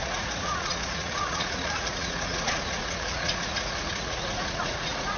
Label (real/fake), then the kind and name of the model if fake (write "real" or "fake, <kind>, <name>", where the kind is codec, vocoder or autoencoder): fake, vocoder, Vocos